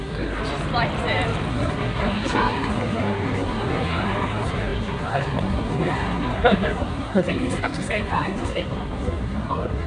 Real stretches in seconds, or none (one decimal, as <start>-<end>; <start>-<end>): 0.4-1.5